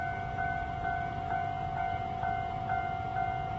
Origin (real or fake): real